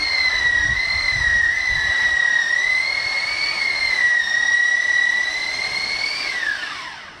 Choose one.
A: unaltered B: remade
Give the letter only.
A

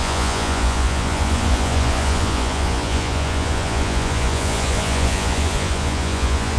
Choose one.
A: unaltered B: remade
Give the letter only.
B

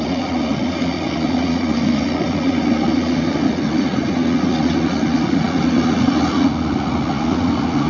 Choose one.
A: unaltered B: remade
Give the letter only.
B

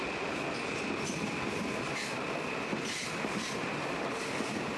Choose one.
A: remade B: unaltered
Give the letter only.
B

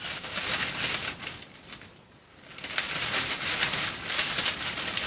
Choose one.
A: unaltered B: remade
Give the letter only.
A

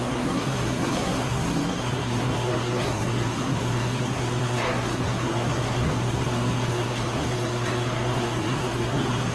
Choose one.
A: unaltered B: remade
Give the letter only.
B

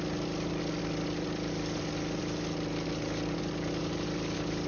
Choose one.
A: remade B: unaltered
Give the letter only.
B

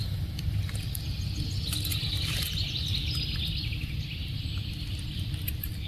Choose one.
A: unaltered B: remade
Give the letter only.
A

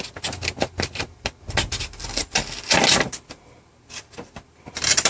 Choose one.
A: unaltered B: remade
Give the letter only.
A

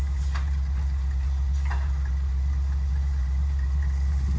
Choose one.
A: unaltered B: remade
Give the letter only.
A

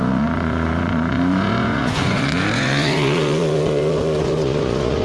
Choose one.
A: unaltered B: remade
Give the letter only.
B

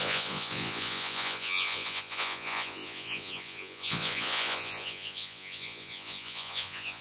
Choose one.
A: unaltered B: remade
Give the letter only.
B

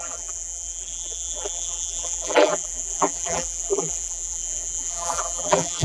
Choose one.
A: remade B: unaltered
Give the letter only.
A